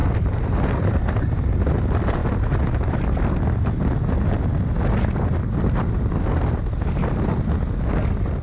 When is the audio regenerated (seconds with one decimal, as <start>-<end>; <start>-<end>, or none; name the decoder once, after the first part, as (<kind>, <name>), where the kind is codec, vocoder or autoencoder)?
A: 0.0-1.0 (vocoder, BigVGAN v2); 5.4-6.6